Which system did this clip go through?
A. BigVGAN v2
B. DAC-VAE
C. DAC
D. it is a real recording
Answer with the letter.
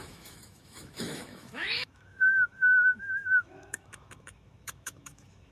B